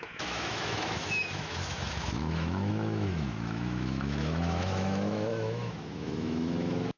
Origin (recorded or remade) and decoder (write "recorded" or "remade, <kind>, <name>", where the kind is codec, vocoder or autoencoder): remade, autoencoder, DAC-VAE